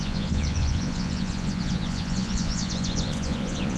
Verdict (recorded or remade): remade